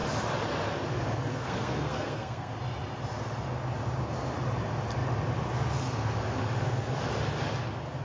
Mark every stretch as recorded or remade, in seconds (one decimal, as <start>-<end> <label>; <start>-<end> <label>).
0.0-1.3 recorded; 1.3-2.5 remade; 2.5-8.0 recorded